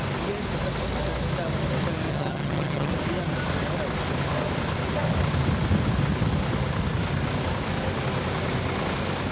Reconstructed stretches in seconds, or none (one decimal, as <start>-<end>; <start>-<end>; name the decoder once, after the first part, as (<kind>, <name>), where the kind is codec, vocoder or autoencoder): 2.1-2.9 (vocoder, HiFi-GAN)